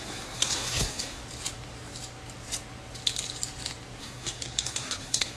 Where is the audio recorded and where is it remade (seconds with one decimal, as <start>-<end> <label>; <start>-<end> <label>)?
0.0-1.2 remade; 1.2-4.0 recorded; 4.0-5.4 remade